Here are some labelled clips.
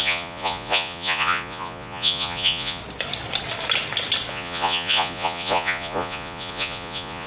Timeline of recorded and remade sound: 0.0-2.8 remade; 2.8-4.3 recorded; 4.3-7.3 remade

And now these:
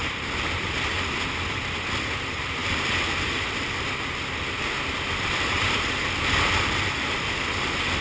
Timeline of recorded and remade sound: 0.0-8.0 recorded